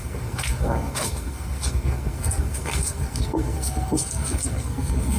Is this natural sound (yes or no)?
no